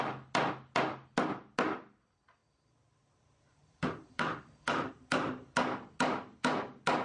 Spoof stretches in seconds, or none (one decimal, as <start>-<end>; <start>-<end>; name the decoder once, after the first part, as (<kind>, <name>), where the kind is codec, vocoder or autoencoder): 2.4-4.9 (vocoder, BigVGAN v2)

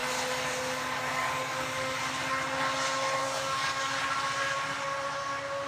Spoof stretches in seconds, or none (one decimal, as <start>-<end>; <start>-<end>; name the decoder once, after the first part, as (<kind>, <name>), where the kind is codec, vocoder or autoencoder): 1.0-2.0 (codec, DAC); 3.2-4.0